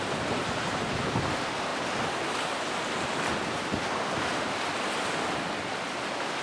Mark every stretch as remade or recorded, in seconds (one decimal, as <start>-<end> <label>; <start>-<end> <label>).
0.0-6.4 recorded